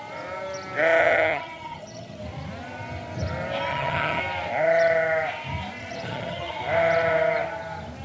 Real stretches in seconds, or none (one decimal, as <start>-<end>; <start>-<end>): 0.0-1.0; 2.2-3.7; 4.2-5.8; 6.5-8.0